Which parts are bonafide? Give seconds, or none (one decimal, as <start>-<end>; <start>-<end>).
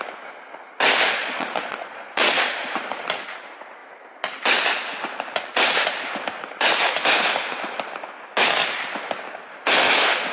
0.0-1.2; 2.7-10.3